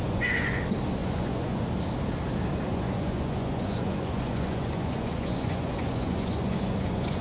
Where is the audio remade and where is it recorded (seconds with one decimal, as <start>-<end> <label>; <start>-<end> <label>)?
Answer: 0.0-0.6 remade; 0.6-1.0 recorded; 1.0-1.6 remade; 1.6-2.7 recorded; 2.7-7.2 remade